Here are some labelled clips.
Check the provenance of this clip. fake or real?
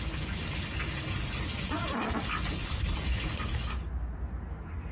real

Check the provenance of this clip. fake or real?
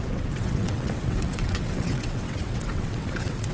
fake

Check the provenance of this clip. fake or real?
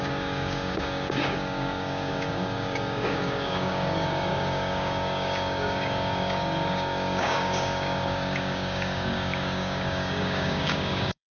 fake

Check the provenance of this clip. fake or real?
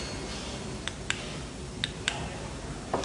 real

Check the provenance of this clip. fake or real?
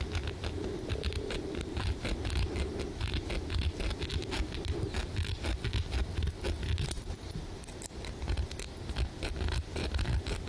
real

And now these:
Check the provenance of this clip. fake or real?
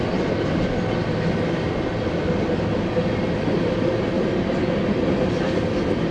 real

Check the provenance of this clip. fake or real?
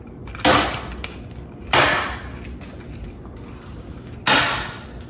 real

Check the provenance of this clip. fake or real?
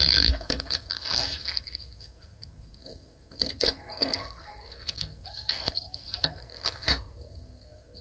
fake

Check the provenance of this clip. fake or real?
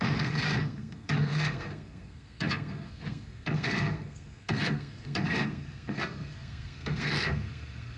fake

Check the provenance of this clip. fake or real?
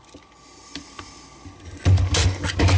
real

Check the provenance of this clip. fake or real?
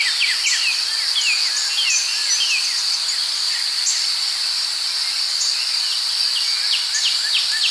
real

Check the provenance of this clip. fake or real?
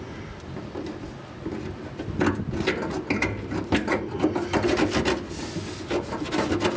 real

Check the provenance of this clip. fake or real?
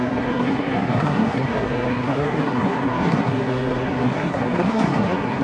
fake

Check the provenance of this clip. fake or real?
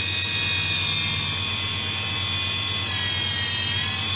real